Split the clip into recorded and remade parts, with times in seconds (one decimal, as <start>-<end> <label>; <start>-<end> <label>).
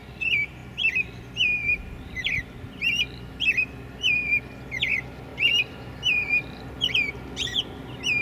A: 0.0-1.6 recorded; 1.6-2.3 remade; 2.3-5.3 recorded; 5.3-6.7 remade; 6.7-8.2 recorded